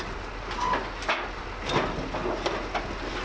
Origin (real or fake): real